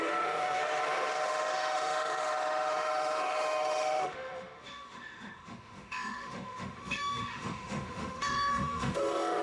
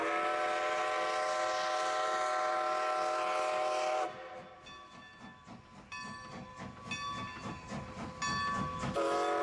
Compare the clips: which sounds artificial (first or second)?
first